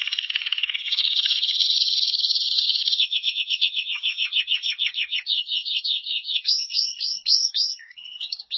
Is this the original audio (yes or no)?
no